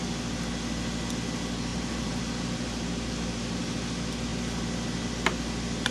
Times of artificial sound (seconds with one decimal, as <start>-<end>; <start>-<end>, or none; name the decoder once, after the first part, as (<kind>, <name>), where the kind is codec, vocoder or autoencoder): 1.7-2.2 (vocoder, BigVGAN v2)